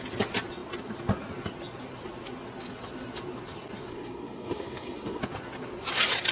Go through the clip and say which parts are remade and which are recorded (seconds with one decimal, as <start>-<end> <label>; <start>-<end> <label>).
0.0-3.9 recorded; 3.9-5.2 remade; 5.2-6.3 recorded